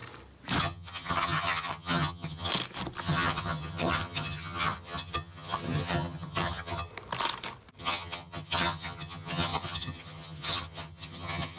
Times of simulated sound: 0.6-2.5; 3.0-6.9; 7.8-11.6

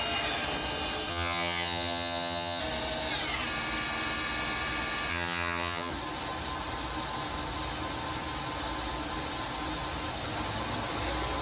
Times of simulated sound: 1.1-2.6; 5.1-5.9

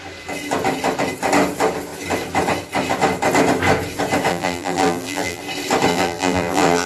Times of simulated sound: 4.3-5.4; 5.9-6.9

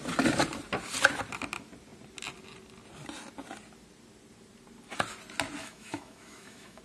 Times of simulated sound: 5.6-6.8

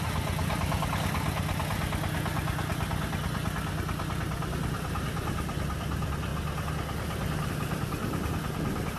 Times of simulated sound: none

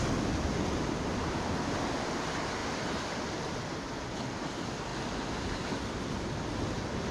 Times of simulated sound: none